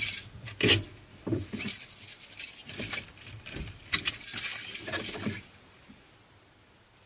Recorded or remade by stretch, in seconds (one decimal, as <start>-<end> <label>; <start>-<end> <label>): 0.0-1.1 recorded; 1.1-1.7 remade; 1.7-2.6 recorded; 2.6-3.9 remade; 3.9-4.5 recorded; 4.5-5.4 remade; 5.4-7.1 recorded